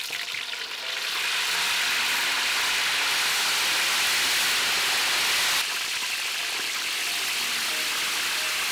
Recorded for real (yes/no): yes